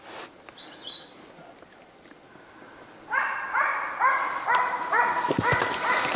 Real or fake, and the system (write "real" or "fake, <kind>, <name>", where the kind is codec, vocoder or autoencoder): real